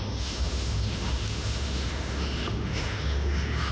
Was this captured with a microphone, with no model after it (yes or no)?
no